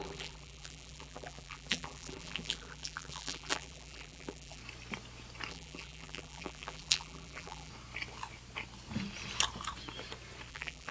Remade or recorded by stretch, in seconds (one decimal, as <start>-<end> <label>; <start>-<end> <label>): 0.0-4.6 remade; 4.6-5.5 recorded; 5.5-7.7 remade; 7.7-10.5 recorded; 10.5-10.9 remade